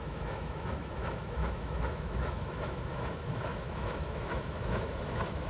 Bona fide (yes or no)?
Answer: no